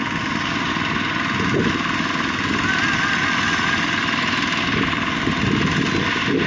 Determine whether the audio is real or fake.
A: real